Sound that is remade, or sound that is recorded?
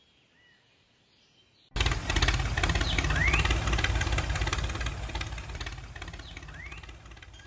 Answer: recorded